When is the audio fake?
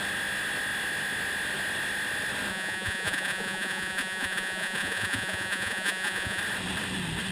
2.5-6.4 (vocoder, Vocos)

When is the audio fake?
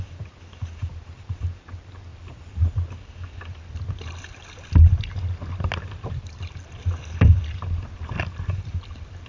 none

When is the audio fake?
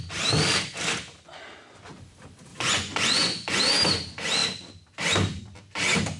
2.5-3.6 (vocoder, Vocos)